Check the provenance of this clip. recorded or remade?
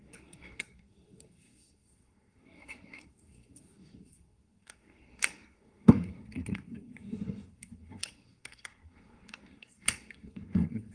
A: remade